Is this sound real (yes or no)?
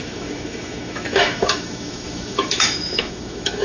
no